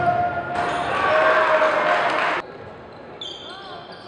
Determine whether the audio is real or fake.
real